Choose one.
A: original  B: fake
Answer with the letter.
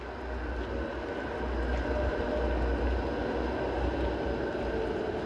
A